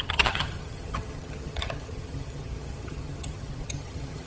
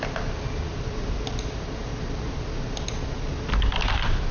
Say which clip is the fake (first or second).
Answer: first